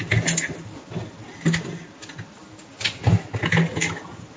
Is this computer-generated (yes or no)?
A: no